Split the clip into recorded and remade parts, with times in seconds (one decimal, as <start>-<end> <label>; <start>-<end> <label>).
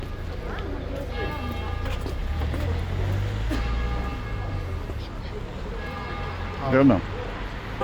0.0-2.2 recorded; 2.2-2.8 remade; 2.8-7.8 recorded